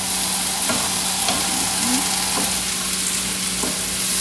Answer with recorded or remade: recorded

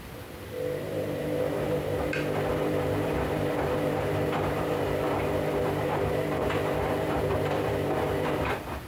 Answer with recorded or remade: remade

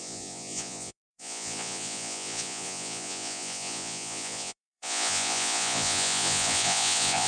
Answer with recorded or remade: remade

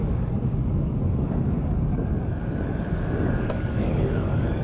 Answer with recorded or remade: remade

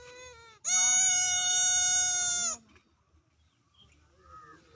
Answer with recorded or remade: recorded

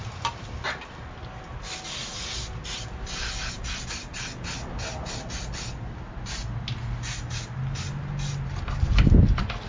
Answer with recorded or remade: recorded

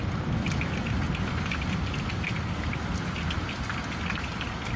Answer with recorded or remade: recorded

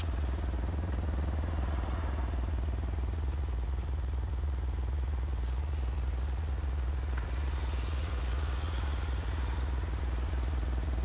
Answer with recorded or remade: remade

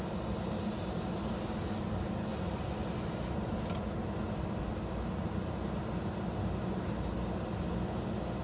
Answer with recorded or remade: recorded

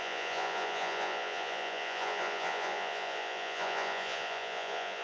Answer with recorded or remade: remade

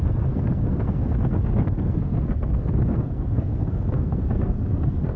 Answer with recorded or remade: remade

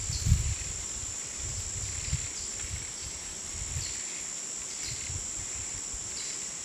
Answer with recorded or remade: recorded